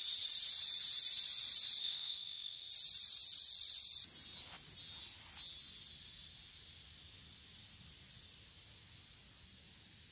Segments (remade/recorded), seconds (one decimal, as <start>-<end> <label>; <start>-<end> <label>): 0.0-1.8 recorded; 1.8-2.7 remade; 2.7-10.1 recorded